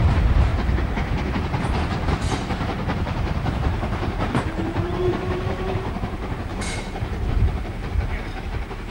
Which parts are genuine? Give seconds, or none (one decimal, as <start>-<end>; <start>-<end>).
0.5-1.3